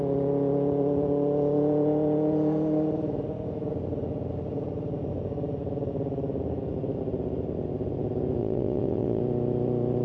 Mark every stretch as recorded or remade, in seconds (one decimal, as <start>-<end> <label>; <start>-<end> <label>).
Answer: 0.0-8.4 recorded; 8.4-9.2 remade; 9.2-10.0 recorded